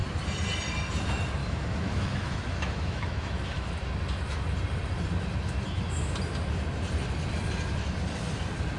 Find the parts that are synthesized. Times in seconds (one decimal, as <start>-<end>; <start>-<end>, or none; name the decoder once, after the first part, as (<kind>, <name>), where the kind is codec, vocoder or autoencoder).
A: 1.4-3.7 (autoencoder, DAC-VAE)